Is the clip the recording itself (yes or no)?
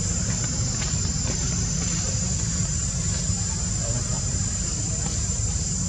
no